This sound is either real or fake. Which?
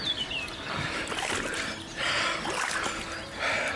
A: real